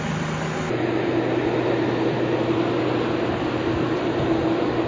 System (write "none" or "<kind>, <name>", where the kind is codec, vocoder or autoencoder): none